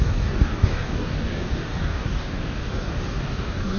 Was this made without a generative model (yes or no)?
no